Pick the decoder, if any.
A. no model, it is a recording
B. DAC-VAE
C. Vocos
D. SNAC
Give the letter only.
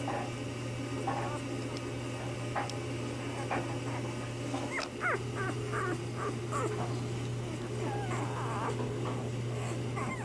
A